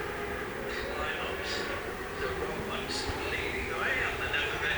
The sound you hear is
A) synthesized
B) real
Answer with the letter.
A